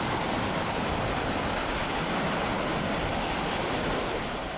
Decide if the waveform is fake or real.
real